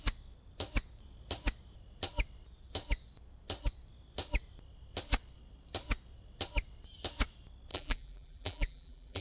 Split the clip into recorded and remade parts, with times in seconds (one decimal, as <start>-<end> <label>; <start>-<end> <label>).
0.0-7.7 recorded; 7.7-9.2 remade